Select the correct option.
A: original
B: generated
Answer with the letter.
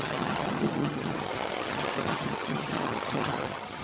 B